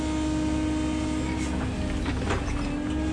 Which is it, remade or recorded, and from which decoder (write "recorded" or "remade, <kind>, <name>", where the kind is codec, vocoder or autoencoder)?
recorded